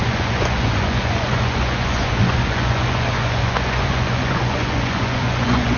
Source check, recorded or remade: remade